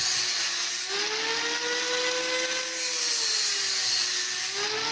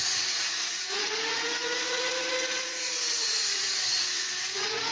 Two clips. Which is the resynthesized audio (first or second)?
second